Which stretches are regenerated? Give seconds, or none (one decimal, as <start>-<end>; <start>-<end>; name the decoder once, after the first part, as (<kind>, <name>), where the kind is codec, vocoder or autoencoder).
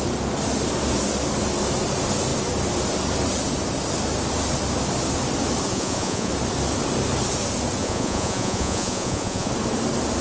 5.7-6.3 (vocoder, Vocos); 7.8-9.5